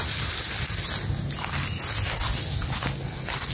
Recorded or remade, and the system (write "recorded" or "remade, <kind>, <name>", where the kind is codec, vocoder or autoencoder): recorded